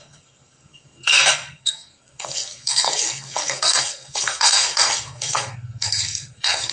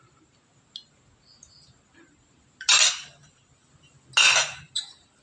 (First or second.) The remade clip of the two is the first